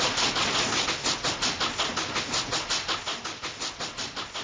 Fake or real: real